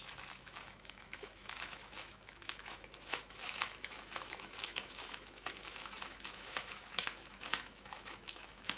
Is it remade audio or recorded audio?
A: remade